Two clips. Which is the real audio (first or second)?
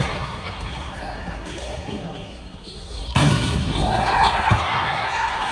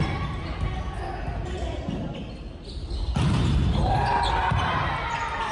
second